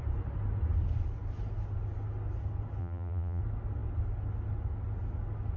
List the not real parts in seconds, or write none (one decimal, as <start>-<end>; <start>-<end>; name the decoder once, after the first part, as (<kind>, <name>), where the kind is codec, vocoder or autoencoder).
2.8-3.4 (vocoder, BigVGAN v2)